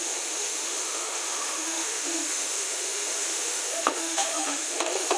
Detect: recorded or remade remade